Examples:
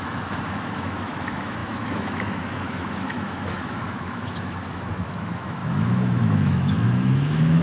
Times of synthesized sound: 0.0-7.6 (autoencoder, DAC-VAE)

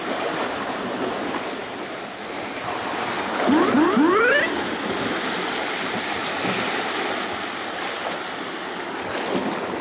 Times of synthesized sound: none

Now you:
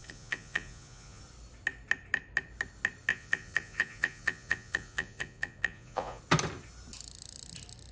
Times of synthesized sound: 0.0-1.2 (vocoder, Vocos); 3.1-6.2

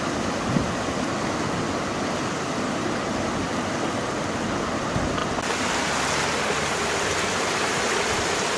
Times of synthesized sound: none

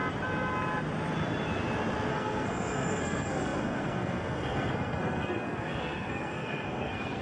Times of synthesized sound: 2.1-7.2 (codec, SNAC)